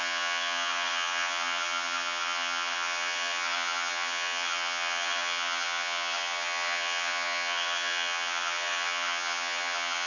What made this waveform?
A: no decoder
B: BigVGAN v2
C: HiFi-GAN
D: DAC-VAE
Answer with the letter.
C